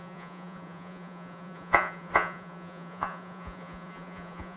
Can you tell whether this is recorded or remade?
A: remade